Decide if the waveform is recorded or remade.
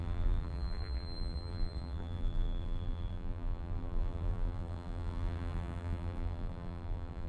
remade